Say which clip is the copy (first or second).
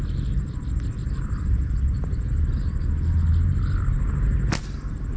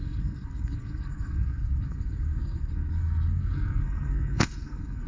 second